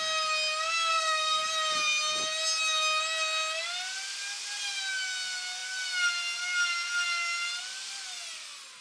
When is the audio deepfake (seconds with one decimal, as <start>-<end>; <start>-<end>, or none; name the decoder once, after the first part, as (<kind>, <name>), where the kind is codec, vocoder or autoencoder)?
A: 0.9-1.4 (codec, SNAC)